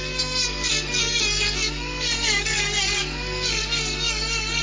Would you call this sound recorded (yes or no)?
no